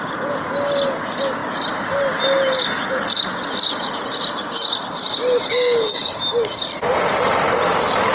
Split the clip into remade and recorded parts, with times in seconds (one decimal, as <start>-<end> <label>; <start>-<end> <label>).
0.0-8.1 recorded